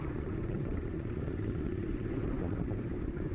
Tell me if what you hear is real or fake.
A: fake